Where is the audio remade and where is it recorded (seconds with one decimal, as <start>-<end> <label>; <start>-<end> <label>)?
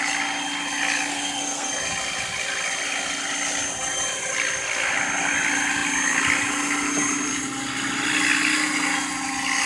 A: 0.0-1.1 recorded; 1.1-1.7 remade; 1.7-9.7 recorded